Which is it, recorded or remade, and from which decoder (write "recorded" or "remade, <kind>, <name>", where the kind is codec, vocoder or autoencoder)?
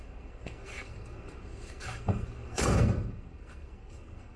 remade, codec, SNAC